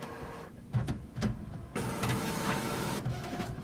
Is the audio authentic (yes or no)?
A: no